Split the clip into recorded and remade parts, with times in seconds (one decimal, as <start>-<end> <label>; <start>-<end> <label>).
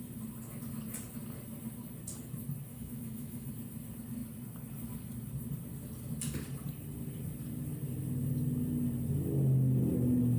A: 0.0-2.7 recorded; 2.7-3.5 remade; 3.5-10.4 recorded